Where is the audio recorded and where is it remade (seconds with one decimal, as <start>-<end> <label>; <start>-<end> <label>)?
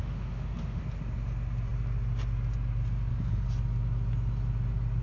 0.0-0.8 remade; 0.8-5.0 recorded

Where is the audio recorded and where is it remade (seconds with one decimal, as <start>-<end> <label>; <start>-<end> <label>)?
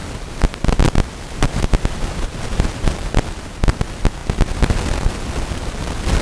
0.0-6.2 recorded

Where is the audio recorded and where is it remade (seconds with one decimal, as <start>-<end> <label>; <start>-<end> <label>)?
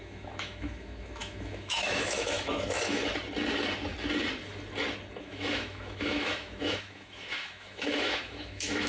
0.0-3.0 remade; 3.0-5.2 recorded; 5.2-8.9 remade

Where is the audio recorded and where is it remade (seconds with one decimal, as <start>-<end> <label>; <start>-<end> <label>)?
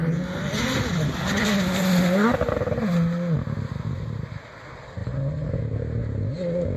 0.0-6.8 recorded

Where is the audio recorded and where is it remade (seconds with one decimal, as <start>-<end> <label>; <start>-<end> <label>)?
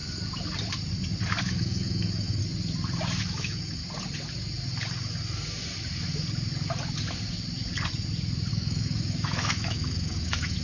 0.0-1.4 recorded; 1.4-2.4 remade; 2.4-3.2 recorded; 3.2-3.8 remade; 3.8-8.5 recorded; 8.5-10.6 remade